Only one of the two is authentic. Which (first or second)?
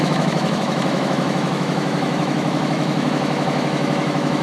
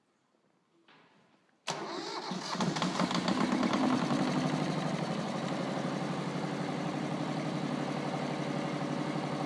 second